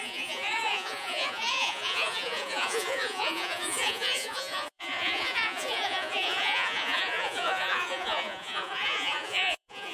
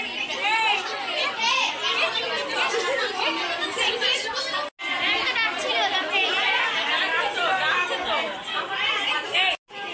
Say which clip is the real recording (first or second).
second